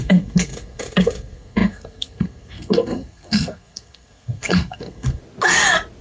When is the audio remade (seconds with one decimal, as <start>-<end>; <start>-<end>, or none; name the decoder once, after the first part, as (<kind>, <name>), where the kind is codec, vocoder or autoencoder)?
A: 0.0-5.2 (codec, SNAC)